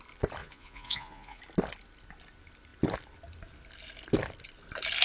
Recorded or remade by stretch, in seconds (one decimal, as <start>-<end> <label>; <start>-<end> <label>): 0.0-0.4 recorded; 0.4-1.4 remade; 1.4-5.0 recorded